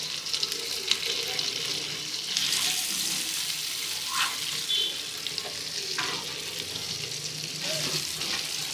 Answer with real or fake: real